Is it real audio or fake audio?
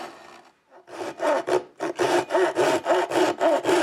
real